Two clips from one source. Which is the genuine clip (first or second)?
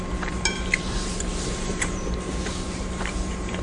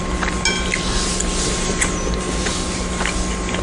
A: second